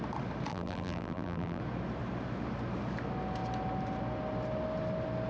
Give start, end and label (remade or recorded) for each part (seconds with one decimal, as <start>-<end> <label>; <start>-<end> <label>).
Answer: 0.0-0.5 recorded; 0.5-1.6 remade; 1.6-5.3 recorded